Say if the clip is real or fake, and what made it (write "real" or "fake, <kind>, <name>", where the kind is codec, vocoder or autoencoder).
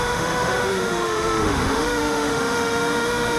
fake, autoencoder, DAC-VAE